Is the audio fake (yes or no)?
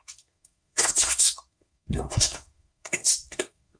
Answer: yes